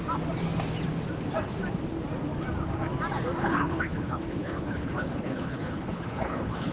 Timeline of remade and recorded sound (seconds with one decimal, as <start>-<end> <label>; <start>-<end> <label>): 0.0-3.4 recorded; 3.4-6.7 remade